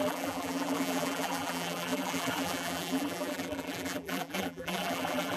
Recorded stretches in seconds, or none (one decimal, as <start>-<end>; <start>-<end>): none